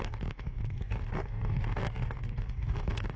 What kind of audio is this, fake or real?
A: fake